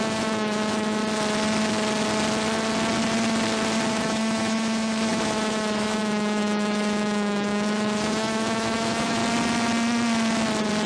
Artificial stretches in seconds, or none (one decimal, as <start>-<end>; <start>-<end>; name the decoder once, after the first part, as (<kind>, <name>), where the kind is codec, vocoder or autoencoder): 0.0-1.0 (autoencoder, DAC-VAE); 3.9-9.2